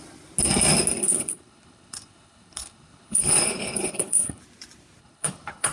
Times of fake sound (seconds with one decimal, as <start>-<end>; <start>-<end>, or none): 1.0-4.4; 5.0-5.7